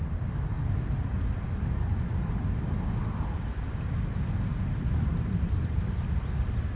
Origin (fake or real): real